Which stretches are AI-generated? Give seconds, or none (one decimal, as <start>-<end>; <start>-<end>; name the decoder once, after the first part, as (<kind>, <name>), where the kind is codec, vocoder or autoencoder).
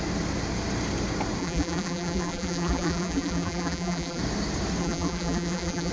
1.4-4.2 (vocoder, BigVGAN v2); 4.8-5.9